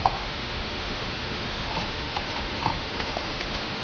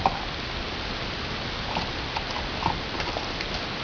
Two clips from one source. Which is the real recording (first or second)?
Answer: second